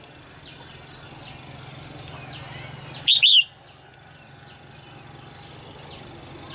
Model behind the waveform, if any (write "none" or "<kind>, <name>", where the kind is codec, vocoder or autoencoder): none